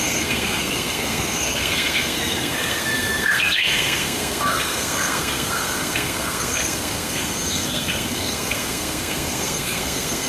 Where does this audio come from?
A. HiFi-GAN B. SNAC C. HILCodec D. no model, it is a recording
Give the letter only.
B